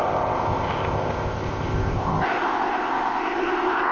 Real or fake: fake